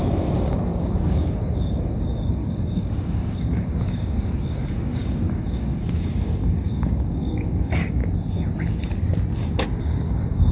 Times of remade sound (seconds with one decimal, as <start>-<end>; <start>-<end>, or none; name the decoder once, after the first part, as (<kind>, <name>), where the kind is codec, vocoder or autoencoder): 0.0-8.0 (codec, DAC); 9.8-10.5